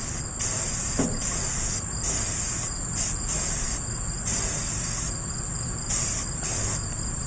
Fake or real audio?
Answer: real